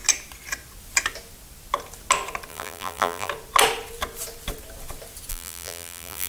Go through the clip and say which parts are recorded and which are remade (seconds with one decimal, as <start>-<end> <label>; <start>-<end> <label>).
0.0-2.5 recorded; 2.5-3.3 remade; 3.3-5.3 recorded; 5.3-6.3 remade